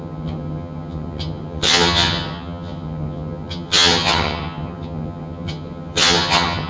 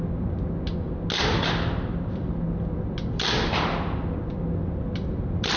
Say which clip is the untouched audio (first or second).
second